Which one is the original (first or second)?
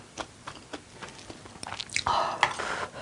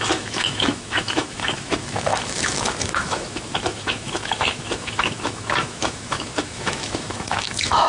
first